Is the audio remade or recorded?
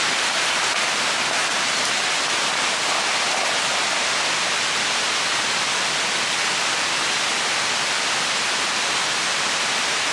recorded